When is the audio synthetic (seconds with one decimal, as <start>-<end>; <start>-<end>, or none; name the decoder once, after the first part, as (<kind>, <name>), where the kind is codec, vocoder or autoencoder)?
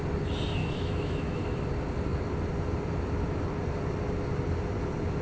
0.6-1.6 (autoencoder, DAC-VAE)